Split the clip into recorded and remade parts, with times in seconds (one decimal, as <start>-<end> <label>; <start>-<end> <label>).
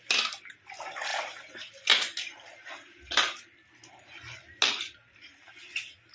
0.0-6.1 recorded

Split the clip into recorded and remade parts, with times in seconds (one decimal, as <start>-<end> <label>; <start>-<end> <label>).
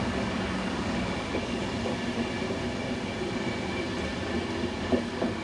0.0-1.6 remade; 1.6-4.8 recorded; 4.8-5.4 remade